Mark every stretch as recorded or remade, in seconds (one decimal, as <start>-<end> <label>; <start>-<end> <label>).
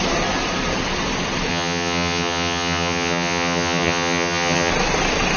0.0-1.5 recorded; 1.5-4.7 remade; 4.7-5.4 recorded